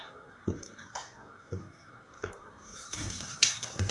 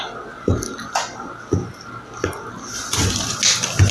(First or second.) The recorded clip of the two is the second